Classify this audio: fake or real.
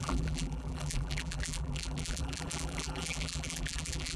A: fake